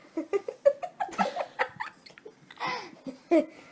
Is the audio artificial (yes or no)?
no